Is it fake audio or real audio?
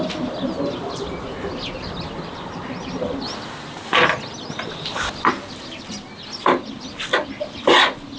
real